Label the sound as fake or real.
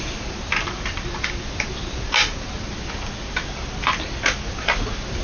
real